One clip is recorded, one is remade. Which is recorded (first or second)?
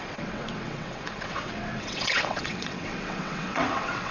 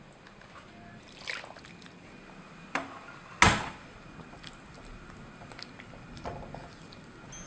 second